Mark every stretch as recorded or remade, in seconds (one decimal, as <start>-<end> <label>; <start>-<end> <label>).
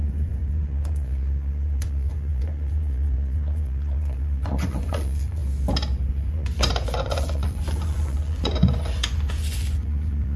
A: 0.0-5.4 remade; 5.4-6.1 recorded; 6.1-10.4 remade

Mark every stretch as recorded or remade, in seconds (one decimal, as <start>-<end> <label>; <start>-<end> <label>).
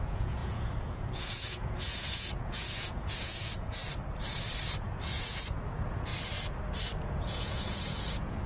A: 0.0-3.8 remade; 3.8-4.8 recorded; 4.8-6.1 remade; 6.1-7.0 recorded; 7.0-8.5 remade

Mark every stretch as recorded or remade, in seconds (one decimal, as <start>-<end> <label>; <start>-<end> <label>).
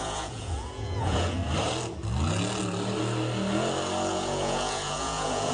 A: 0.0-1.4 remade; 1.4-4.1 recorded; 4.1-5.5 remade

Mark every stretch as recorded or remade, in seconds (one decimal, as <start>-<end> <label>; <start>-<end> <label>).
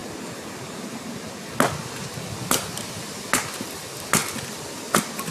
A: 0.0-5.3 recorded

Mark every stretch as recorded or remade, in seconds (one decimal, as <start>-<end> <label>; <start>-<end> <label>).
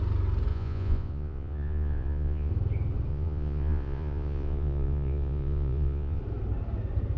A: 0.0-0.5 recorded; 0.5-2.5 remade; 2.5-3.1 recorded; 3.1-6.2 remade; 6.2-7.2 recorded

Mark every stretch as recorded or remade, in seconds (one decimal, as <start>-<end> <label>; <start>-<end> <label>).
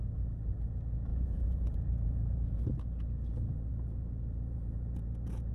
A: 0.0-1.1 recorded; 1.1-2.7 remade; 2.7-3.7 recorded; 3.7-5.5 remade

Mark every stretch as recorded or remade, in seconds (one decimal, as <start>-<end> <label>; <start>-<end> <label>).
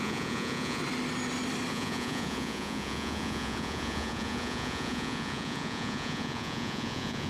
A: 0.0-0.8 remade; 0.8-1.7 recorded; 1.7-7.3 remade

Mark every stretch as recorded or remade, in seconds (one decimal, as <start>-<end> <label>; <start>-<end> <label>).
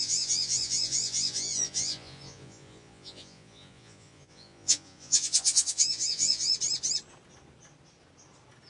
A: 0.0-6.5 remade; 6.5-8.7 recorded